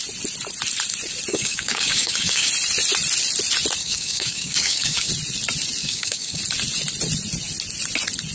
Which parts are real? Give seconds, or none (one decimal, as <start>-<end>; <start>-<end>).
0.0-1.3; 2.5-3.8; 5.1-5.8; 6.4-8.3